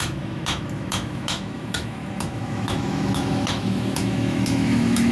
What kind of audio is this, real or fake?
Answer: fake